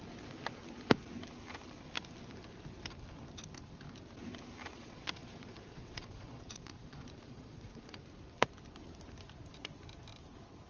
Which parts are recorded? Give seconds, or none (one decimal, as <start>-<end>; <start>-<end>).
0.0-4.7; 8.0-10.7